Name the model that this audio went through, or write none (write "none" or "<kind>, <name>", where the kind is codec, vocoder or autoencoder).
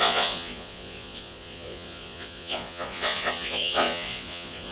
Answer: vocoder, Vocos